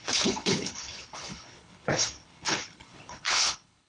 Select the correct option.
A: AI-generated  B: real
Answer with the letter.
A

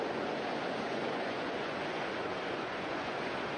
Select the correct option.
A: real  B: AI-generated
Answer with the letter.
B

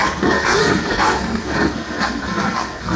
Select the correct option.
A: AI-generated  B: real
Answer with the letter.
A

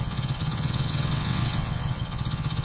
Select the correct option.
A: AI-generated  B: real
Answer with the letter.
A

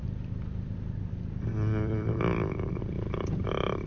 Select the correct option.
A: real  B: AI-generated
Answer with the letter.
B